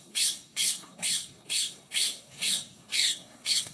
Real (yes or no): no